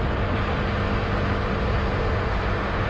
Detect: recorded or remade recorded